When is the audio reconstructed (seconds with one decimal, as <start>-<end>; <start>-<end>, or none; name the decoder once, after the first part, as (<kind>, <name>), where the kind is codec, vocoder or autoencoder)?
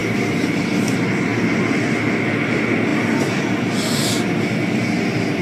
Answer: 0.0-0.6 (vocoder, BigVGAN v2)